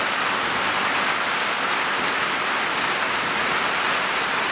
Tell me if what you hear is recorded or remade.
remade